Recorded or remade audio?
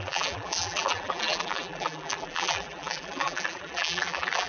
remade